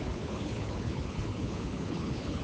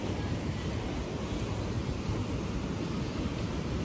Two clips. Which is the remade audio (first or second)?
first